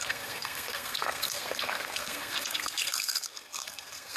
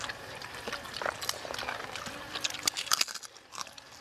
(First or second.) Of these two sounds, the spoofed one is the first